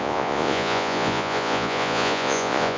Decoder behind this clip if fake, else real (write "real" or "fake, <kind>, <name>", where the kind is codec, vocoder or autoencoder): fake, vocoder, Vocos